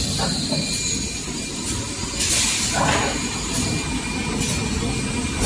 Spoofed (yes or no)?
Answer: no